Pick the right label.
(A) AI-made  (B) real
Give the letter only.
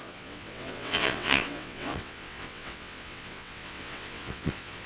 A